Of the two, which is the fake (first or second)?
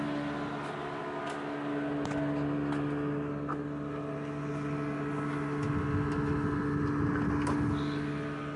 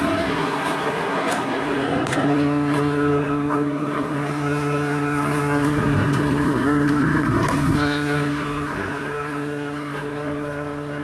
second